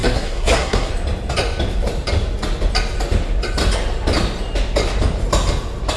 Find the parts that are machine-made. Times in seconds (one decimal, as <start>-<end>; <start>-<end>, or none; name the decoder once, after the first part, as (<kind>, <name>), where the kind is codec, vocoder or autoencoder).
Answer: 0.0-0.9 (codec, SNAC)